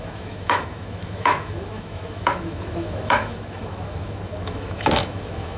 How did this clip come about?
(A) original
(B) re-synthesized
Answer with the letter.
B